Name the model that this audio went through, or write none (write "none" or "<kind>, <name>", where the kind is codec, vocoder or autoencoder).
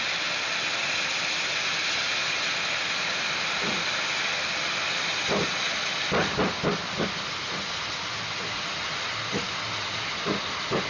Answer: none